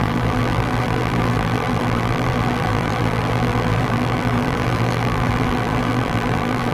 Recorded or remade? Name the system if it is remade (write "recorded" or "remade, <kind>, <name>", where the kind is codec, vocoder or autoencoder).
remade, vocoder, BigVGAN v2